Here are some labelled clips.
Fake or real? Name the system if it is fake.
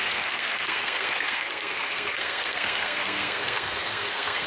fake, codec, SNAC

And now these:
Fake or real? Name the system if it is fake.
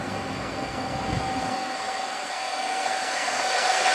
fake, codec, SNAC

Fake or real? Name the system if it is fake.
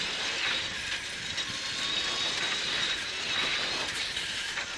real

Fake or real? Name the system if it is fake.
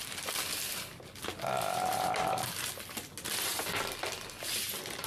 real